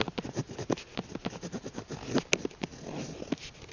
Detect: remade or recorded recorded